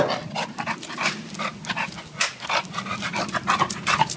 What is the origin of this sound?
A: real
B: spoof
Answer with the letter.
A